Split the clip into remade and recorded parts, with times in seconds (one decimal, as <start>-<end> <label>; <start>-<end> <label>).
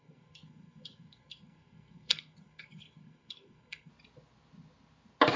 0.0-3.9 remade; 3.9-5.4 recorded